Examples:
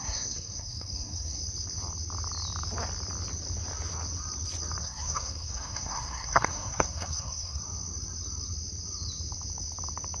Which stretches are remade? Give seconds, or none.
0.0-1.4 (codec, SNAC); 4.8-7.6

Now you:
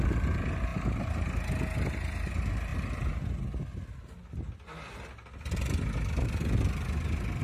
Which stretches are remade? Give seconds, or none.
none

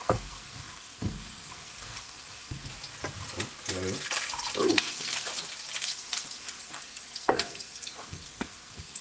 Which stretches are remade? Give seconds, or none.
0.0-2.7 (codec, SNAC); 4.6-5.3; 5.8-9.0

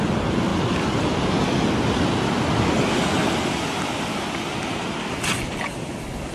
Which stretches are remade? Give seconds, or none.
none

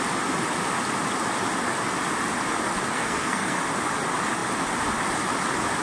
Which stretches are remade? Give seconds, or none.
2.9-3.6 (codec, SNAC)

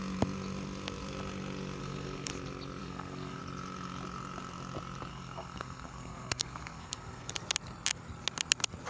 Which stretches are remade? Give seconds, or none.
1.8-2.3 (codec, SNAC); 2.8-3.4; 5.1-7.3

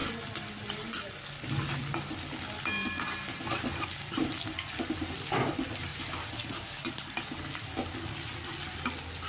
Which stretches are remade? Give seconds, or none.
none

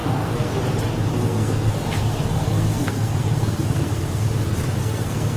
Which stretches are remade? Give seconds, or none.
0.0-0.5 (codec, SNAC); 1.1-4.3; 4.8-5.4